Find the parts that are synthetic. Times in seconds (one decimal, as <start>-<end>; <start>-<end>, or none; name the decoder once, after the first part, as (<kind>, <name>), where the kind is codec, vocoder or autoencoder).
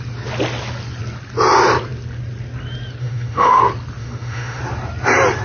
3.0-3.6 (autoencoder, DAC-VAE); 4.0-4.6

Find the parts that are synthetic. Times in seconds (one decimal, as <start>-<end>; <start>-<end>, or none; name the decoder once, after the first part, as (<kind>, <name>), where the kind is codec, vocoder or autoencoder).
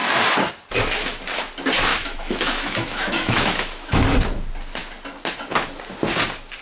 1.9-4.0 (autoencoder, DAC-VAE)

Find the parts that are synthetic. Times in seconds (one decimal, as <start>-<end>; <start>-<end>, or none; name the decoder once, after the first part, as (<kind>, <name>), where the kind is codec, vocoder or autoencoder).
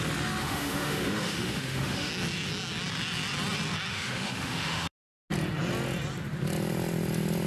0.4-2.1 (autoencoder, DAC-VAE); 3.9-4.9